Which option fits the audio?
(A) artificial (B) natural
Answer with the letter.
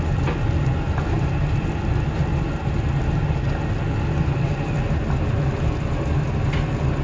B